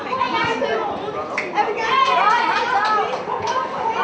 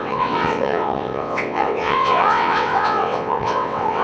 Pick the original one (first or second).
first